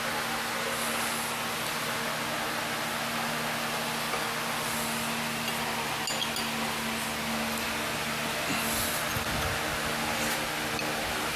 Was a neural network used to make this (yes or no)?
no